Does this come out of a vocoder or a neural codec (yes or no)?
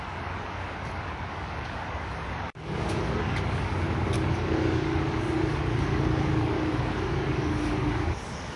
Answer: yes